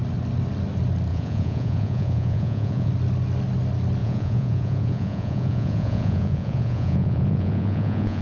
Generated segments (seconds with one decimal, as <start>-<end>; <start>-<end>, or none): 1.1-2.9; 4.0-8.2